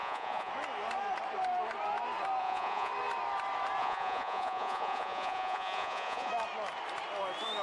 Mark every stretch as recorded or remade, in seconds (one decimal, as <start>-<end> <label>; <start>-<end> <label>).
0.0-0.5 remade; 0.5-2.4 recorded; 2.4-2.9 remade; 2.9-3.8 recorded; 3.8-6.3 remade; 6.3-7.6 recorded